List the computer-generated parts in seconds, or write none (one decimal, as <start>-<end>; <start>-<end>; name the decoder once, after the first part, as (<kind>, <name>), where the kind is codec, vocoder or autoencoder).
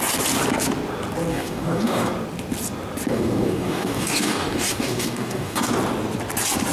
1.3-2.1 (codec, DAC); 3.1-5.7